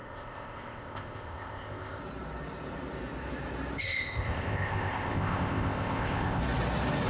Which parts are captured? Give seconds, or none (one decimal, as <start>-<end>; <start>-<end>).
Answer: 2.0-3.8; 6.4-7.1